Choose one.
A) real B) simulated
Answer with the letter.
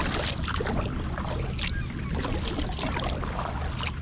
A